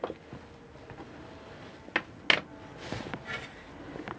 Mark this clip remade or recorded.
recorded